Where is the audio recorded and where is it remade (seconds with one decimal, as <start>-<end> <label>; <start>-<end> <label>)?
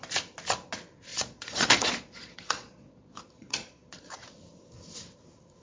0.0-1.1 recorded; 1.1-4.4 remade; 4.4-5.6 recorded